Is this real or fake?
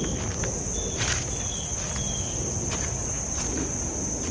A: real